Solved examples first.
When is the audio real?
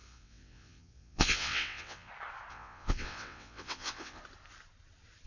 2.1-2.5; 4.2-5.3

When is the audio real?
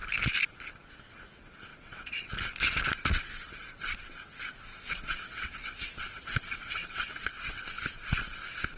0.0-1.7; 2.3-4.7; 7.6-8.8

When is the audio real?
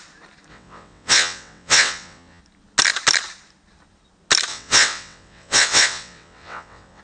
0.0-0.5; 2.4-4.5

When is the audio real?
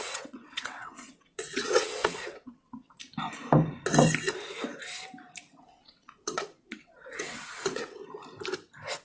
3.0-5.6; 8.0-9.0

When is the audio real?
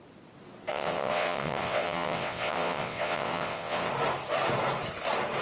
0.0-0.7; 3.9-5.4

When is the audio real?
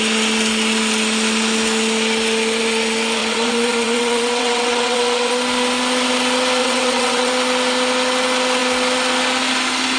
0.0-3.2; 5.3-6.6; 7.3-10.0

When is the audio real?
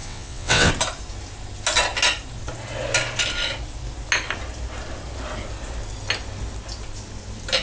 0.7-7.6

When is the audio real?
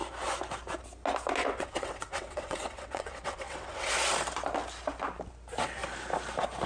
0.0-1.4; 3.9-6.7